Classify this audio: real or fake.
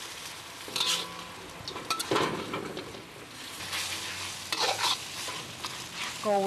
real